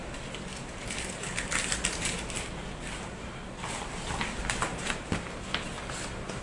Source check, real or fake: real